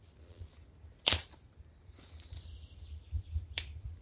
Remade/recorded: recorded